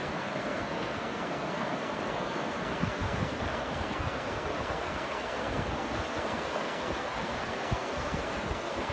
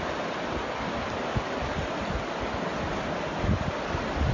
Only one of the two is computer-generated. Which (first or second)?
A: first